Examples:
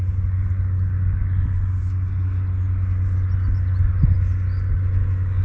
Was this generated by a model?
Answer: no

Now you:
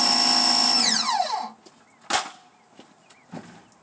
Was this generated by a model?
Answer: no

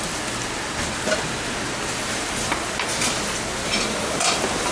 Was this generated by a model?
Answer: no